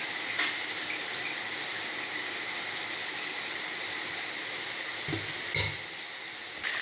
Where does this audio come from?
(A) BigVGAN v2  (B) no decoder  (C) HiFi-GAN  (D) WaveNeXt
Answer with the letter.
B